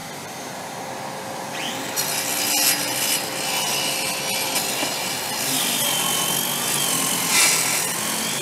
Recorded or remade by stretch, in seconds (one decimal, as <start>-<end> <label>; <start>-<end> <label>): 0.0-0.5 remade; 0.5-8.4 recorded